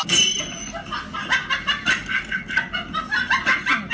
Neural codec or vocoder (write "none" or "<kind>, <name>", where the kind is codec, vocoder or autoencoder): none